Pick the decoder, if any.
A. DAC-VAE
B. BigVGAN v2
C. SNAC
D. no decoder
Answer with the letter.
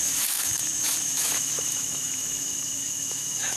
A